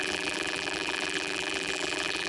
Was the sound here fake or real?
fake